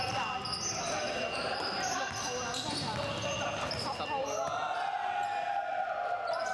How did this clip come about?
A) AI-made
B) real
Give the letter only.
B